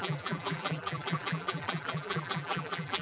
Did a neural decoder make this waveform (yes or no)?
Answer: yes